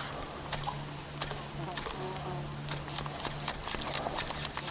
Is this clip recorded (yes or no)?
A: yes